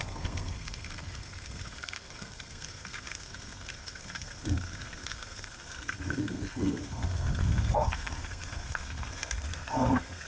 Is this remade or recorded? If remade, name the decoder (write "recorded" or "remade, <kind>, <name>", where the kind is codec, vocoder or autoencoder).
remade, codec, SNAC